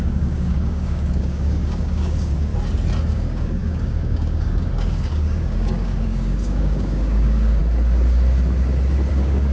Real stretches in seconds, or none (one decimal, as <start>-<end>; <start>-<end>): 2.5-3.1; 7.6-9.1